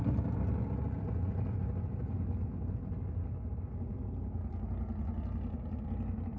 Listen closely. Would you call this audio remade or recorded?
recorded